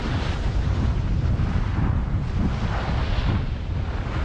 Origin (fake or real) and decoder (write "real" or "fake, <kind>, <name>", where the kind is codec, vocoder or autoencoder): fake, vocoder, BigVGAN v2